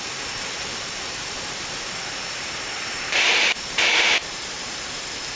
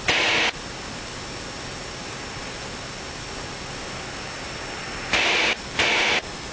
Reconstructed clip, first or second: first